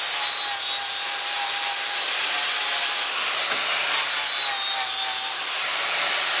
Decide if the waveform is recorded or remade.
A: recorded